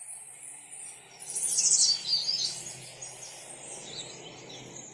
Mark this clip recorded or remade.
recorded